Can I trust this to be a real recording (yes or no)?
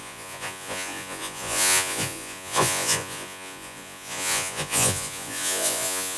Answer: no